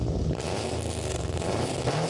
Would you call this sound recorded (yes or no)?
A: yes